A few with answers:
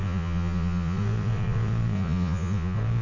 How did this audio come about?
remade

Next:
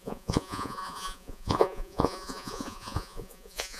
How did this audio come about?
remade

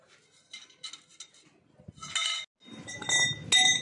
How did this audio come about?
recorded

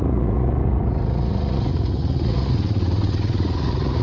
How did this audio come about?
remade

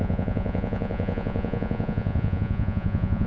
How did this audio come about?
remade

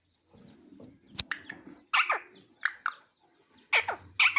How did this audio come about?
recorded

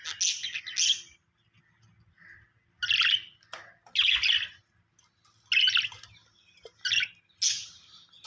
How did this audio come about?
recorded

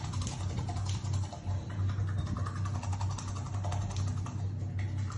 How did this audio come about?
recorded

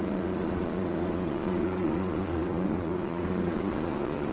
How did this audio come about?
remade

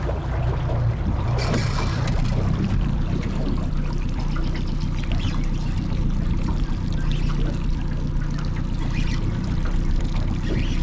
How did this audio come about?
recorded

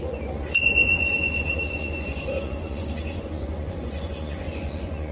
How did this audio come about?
remade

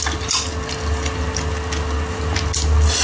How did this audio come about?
recorded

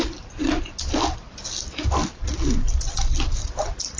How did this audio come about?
recorded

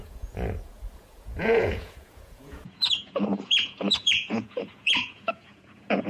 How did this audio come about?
remade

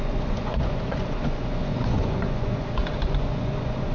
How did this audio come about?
remade